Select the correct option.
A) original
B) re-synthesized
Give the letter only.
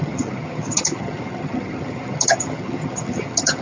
B